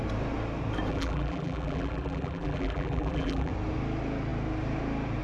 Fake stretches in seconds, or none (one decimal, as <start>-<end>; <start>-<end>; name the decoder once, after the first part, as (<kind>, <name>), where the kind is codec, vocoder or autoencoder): 0.9-3.5 (vocoder, BigVGAN v2)